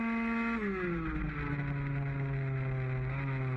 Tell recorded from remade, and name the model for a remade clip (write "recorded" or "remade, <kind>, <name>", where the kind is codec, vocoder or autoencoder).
recorded